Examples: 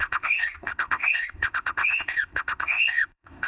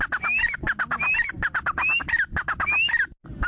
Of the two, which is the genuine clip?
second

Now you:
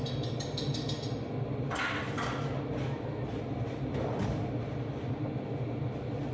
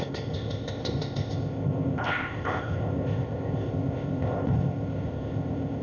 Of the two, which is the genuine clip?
first